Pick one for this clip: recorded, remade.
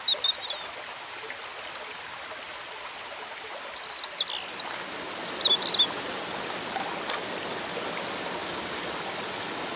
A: recorded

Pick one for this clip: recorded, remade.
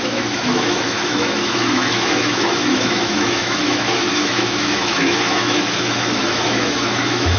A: remade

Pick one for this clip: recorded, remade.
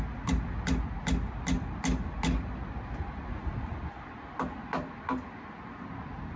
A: recorded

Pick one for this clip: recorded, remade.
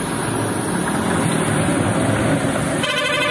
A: recorded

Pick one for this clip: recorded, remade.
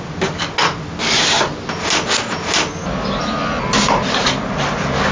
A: recorded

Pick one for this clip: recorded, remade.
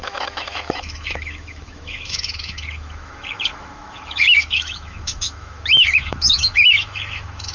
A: remade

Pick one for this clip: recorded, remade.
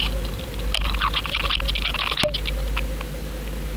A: recorded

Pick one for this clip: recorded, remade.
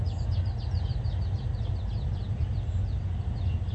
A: recorded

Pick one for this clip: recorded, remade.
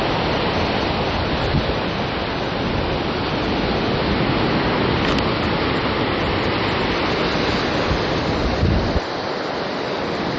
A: recorded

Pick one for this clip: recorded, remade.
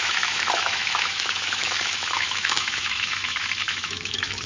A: remade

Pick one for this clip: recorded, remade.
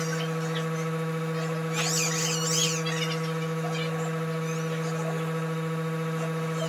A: recorded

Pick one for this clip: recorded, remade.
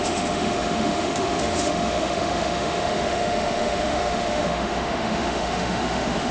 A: remade